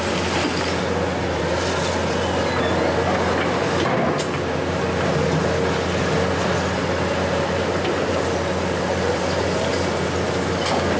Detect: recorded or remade recorded